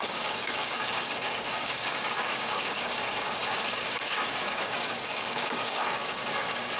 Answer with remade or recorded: remade